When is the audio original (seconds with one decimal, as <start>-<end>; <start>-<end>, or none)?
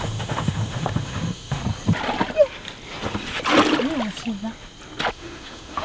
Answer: 1.6-5.1